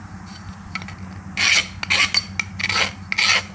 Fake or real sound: real